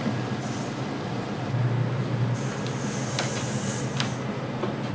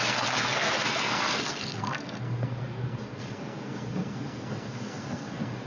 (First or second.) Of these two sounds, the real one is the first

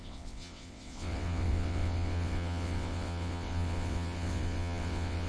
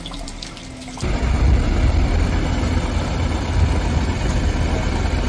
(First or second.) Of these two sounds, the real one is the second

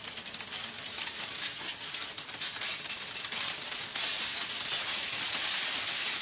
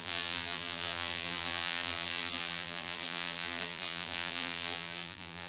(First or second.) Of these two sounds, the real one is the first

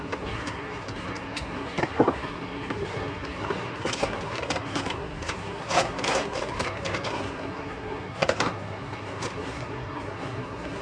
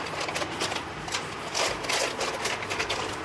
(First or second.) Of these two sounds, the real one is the second